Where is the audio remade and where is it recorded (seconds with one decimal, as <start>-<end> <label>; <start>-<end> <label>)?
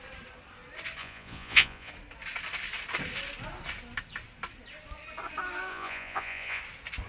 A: 0.0-1.0 recorded; 1.0-1.9 remade; 1.9-5.7 recorded; 5.7-6.6 remade; 6.6-7.1 recorded